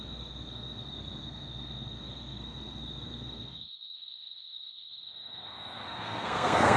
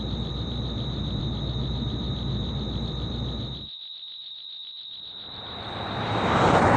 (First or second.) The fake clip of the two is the first